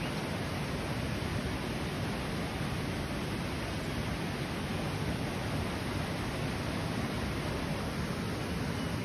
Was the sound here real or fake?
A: real